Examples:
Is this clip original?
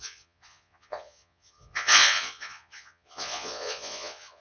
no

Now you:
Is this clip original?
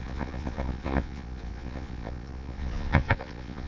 no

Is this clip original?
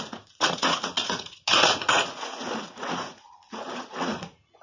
no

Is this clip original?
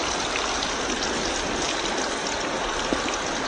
yes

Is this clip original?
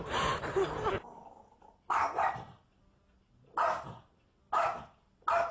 yes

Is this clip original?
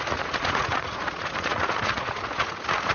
no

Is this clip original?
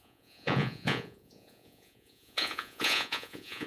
no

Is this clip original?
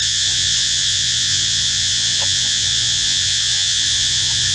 no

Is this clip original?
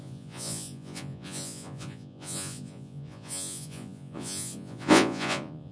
no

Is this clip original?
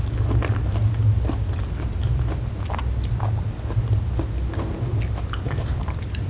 yes